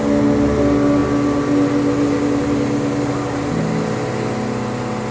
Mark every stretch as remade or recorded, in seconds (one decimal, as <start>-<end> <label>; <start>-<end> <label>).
0.0-5.1 recorded